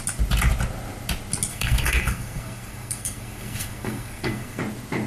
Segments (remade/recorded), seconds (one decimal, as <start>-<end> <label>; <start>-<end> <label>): 0.0-1.5 recorded; 1.5-4.6 remade; 4.6-5.1 recorded